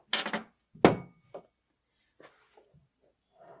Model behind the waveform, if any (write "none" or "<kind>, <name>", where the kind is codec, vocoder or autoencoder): none